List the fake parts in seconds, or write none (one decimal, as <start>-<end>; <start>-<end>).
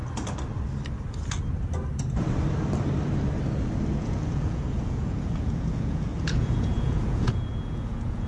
4.0-8.3